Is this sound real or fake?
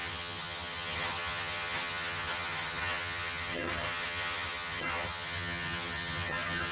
fake